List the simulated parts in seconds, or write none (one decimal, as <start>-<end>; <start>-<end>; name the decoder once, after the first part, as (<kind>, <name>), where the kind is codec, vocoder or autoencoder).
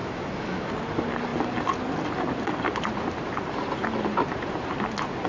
0.0-0.7 (autoencoder, DAC-VAE)